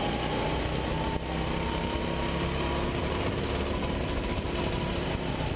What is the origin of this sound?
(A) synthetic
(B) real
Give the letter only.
B